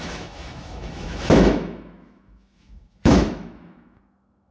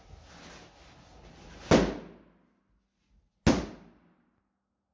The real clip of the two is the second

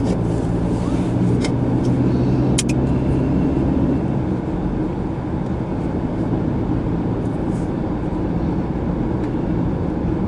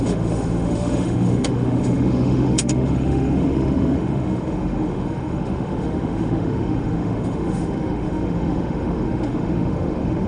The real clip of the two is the first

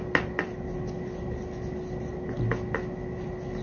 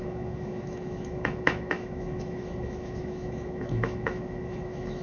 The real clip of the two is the first